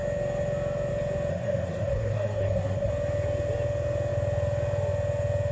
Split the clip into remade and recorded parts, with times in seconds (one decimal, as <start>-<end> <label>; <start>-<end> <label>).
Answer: 0.0-1.3 recorded; 1.3-2.9 remade; 2.9-5.5 recorded